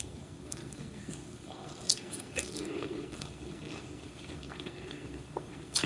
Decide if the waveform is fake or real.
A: fake